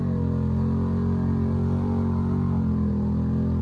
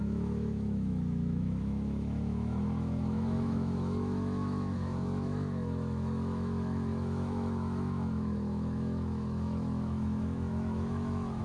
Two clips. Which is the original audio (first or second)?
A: first